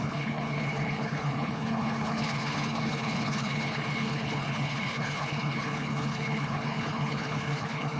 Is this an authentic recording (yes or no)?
no